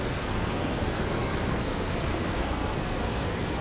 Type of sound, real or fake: fake